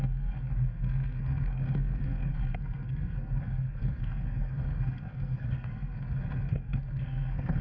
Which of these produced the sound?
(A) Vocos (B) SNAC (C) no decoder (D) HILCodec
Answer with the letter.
B